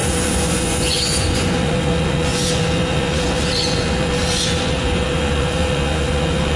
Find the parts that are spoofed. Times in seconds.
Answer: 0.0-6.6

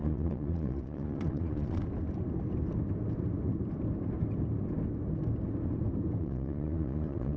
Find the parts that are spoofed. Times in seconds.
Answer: 0.0-1.8; 6.2-7.4

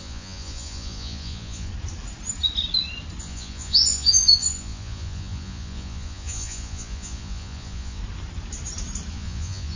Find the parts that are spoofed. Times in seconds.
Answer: 0.0-1.7; 3.2-8.0; 9.1-9.8

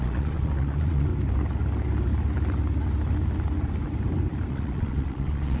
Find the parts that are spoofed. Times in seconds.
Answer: 0.0-1.1; 4.5-5.6

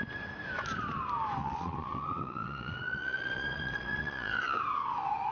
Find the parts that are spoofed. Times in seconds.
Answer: 1.4-4.6

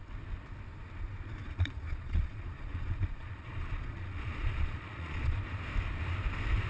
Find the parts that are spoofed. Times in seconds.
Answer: 1.4-5.4